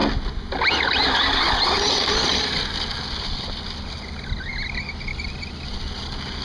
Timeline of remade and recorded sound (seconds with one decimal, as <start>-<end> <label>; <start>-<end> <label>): 0.0-6.4 recorded